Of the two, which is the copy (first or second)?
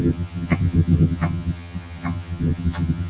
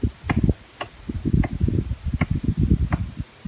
first